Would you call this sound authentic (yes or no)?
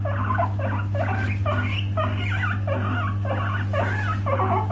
yes